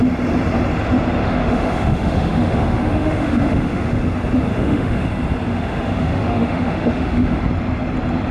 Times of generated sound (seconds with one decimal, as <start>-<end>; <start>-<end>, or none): 1.2-4.0; 4.5-5.1; 5.5-7.4